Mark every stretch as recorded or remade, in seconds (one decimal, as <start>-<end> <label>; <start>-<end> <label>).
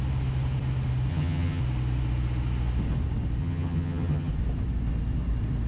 0.0-1.1 recorded; 1.1-1.6 remade; 1.6-3.4 recorded; 3.4-4.3 remade; 4.3-5.7 recorded